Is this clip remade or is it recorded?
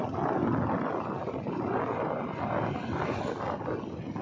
recorded